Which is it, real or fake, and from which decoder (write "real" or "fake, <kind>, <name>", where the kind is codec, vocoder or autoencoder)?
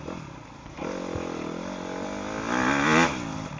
real